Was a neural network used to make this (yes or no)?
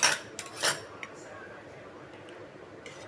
no